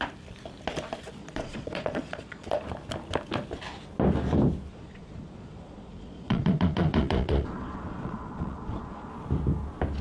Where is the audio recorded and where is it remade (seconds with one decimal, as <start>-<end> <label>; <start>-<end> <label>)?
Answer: 0.0-1.2 recorded; 1.2-2.6 remade; 2.6-4.7 recorded; 4.7-9.1 remade; 9.1-10.0 recorded